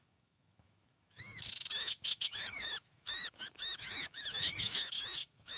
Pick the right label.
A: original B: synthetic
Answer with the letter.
B